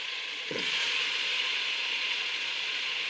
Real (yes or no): no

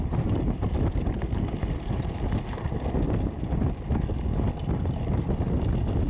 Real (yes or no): yes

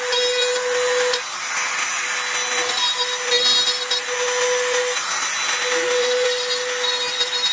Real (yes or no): yes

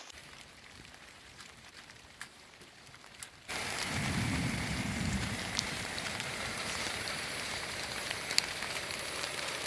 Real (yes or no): no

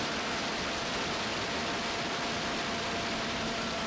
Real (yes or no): no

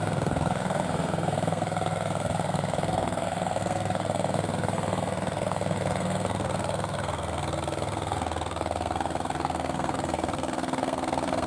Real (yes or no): no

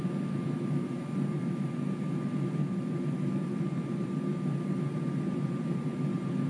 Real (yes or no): yes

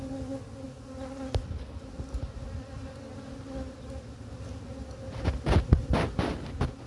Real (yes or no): yes